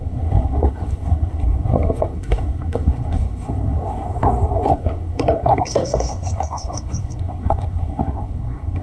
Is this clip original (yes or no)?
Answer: no